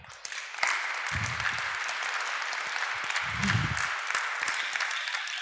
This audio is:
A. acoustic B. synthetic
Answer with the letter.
A